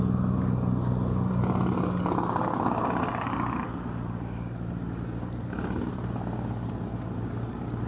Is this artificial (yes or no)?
no